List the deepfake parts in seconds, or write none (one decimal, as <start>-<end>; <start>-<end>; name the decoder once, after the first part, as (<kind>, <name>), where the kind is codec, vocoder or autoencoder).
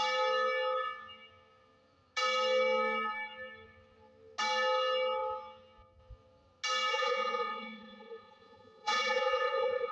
6.9-9.9 (vocoder, Vocos)